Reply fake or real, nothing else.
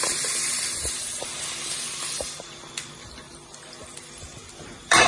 fake